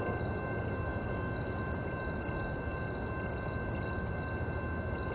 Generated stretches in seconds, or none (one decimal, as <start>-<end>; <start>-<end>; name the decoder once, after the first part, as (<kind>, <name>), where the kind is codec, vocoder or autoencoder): none